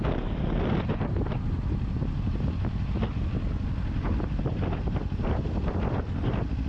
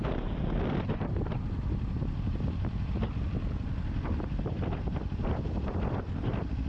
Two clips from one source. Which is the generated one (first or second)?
second